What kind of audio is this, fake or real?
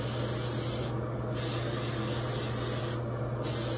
real